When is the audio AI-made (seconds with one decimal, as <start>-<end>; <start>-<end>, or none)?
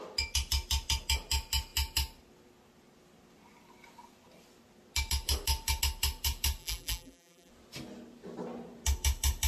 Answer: 6.6-7.5